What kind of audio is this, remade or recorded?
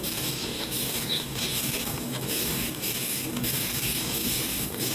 remade